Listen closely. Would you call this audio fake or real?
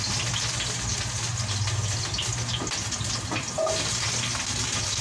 real